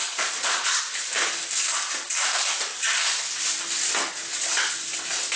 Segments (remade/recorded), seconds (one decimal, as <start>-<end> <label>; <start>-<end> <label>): 0.0-0.8 remade; 0.8-5.4 recorded